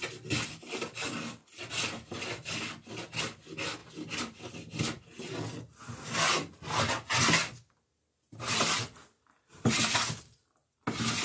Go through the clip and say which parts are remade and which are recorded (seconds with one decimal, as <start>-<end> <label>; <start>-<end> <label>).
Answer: 0.0-11.2 recorded